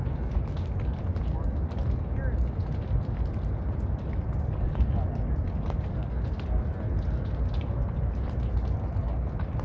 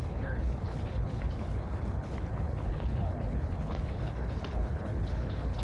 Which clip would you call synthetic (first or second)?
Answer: second